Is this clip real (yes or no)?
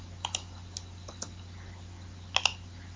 yes